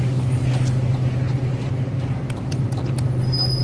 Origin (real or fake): real